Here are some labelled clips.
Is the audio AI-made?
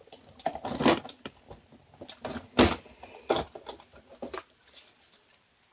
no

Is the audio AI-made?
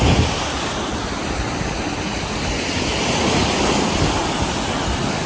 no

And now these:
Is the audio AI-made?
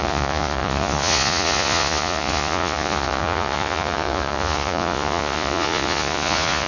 yes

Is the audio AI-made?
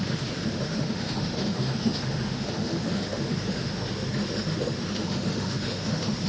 yes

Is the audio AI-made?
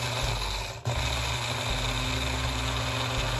no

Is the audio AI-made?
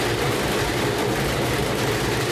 no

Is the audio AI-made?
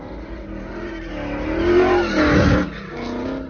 no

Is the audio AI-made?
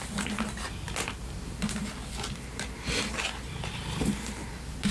no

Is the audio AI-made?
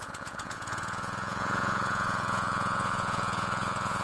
yes